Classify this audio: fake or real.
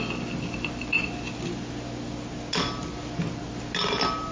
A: real